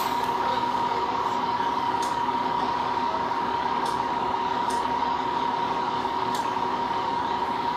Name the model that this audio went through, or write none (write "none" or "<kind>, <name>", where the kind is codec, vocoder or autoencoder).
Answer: codec, DAC